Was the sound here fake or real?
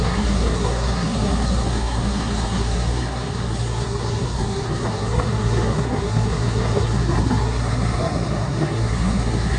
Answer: fake